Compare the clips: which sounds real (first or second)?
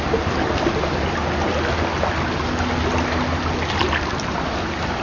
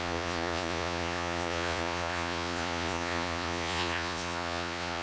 first